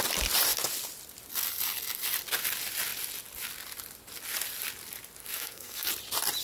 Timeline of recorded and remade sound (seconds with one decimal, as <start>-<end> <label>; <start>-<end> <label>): 0.0-5.2 recorded; 5.2-5.9 remade; 5.9-6.4 recorded